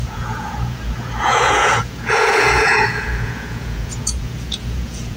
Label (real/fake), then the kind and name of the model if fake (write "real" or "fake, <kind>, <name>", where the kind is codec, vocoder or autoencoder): fake, vocoder, Vocos